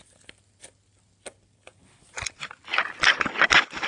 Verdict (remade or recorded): recorded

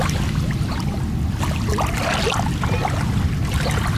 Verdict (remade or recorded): recorded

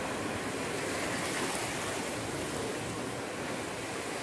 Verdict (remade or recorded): recorded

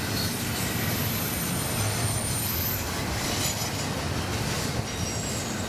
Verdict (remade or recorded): recorded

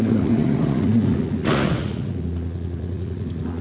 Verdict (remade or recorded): remade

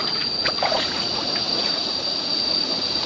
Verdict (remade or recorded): remade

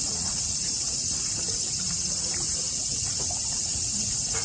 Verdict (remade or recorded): remade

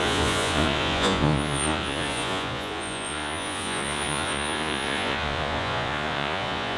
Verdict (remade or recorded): remade